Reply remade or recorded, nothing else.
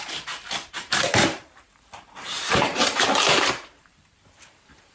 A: remade